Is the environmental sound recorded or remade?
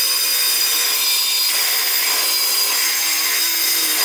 recorded